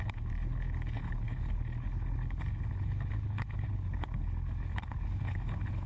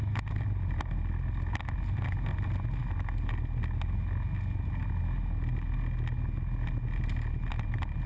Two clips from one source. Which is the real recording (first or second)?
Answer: second